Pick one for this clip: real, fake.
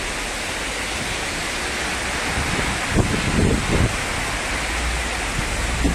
real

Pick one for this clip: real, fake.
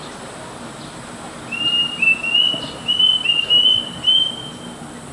real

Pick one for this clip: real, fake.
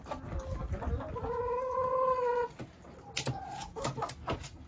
real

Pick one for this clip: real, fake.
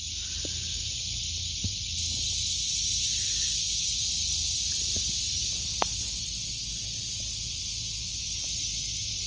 real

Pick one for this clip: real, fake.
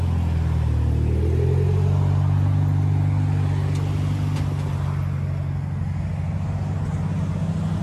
real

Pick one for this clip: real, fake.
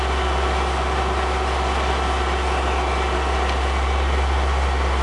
real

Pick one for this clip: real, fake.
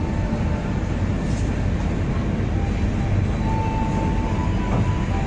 real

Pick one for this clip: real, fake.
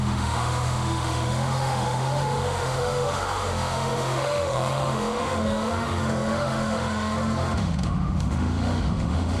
fake